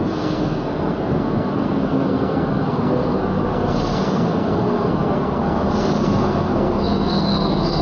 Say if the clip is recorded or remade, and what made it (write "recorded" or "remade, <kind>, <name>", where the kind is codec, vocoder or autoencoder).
remade, codec, SNAC